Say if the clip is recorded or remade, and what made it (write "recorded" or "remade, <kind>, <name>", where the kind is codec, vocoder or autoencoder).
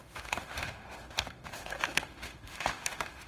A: remade, autoencoder, DAC-VAE